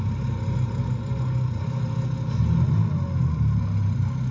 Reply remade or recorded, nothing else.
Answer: recorded